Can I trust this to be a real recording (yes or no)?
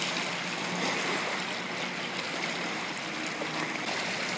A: yes